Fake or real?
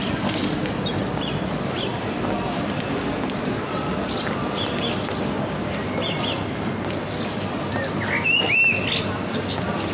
real